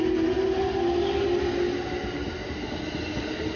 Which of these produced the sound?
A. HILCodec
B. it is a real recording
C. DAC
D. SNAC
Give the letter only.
B